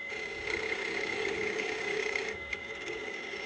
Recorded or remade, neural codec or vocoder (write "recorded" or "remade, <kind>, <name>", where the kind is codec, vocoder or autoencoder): remade, codec, DAC